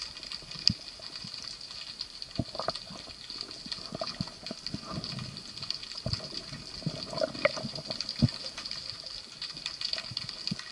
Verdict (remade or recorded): recorded